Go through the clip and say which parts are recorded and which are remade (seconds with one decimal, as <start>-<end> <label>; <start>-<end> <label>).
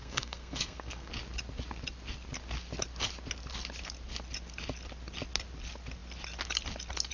0.0-1.1 remade; 1.1-7.1 recorded